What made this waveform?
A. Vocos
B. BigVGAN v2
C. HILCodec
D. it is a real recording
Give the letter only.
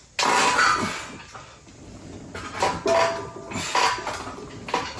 D